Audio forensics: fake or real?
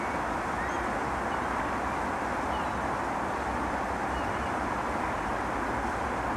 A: real